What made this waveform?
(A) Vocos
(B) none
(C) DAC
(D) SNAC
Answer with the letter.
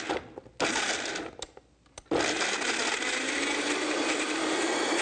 B